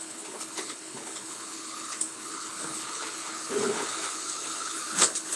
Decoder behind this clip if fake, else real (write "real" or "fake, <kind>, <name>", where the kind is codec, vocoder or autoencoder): fake, codec, HILCodec